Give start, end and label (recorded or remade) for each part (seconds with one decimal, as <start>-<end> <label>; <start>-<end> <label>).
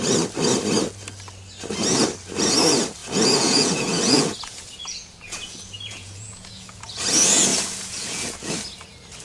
0.0-3.0 recorded; 3.0-6.8 remade; 6.8-7.5 recorded; 7.5-8.5 remade; 8.5-9.2 recorded